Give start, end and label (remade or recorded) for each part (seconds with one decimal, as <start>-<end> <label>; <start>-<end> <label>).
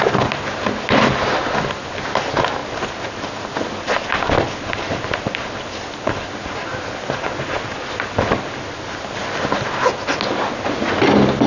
0.0-11.5 recorded